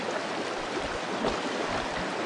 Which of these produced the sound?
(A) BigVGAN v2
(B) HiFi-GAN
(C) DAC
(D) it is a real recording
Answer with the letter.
D